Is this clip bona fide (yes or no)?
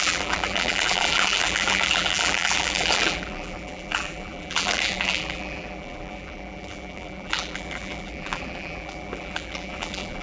no